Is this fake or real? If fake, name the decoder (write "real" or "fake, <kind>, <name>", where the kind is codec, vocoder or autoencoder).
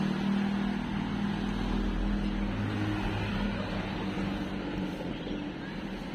real